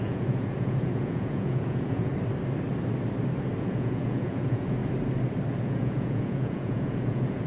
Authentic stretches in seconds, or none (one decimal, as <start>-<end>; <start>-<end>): 2.1-3.6; 4.8-5.6